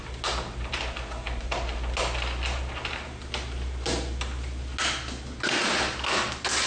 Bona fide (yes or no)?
yes